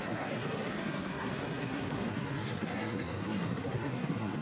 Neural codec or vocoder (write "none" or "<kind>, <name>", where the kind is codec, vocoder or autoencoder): codec, SNAC